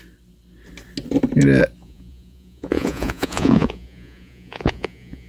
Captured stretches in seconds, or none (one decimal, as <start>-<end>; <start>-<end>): 0.0-1.8